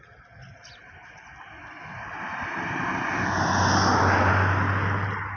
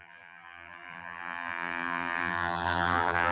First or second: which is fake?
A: second